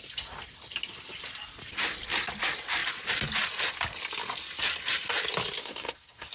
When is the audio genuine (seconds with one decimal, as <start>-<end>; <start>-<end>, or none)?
0.0-5.6

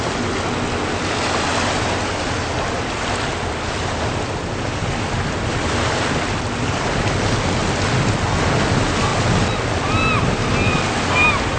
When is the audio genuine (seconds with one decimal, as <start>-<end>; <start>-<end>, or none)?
0.0-11.6

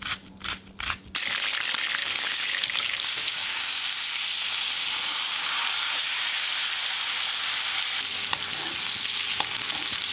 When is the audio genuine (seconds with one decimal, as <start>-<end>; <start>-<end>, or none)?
0.0-2.0; 3.8-5.3; 5.9-10.1

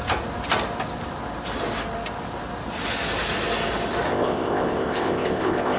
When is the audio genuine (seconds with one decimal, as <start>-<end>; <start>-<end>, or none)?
0.0-4.1

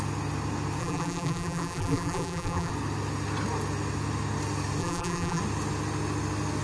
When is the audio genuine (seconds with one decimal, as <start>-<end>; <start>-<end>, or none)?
0.0-0.8; 2.7-4.8; 5.4-6.6